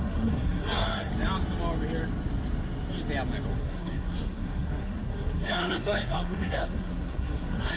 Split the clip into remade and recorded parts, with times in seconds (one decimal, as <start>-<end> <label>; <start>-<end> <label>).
0.0-1.1 remade; 1.1-3.5 recorded; 3.5-7.8 remade